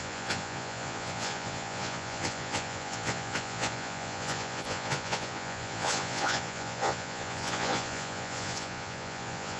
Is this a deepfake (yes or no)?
yes